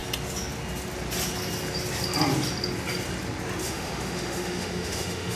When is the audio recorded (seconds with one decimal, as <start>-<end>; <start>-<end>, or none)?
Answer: 0.0-3.6